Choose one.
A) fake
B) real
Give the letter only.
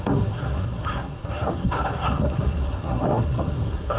A